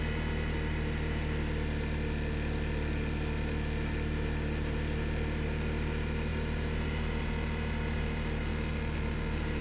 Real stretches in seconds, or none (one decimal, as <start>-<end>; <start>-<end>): 0.0-9.6